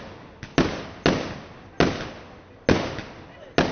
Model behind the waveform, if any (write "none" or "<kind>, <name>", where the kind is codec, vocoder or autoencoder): none